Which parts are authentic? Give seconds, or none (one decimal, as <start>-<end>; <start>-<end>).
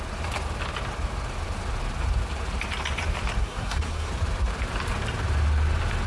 0.0-3.4; 4.1-6.1